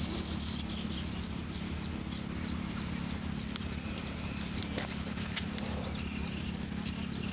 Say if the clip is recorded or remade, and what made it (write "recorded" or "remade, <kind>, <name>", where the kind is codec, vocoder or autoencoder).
recorded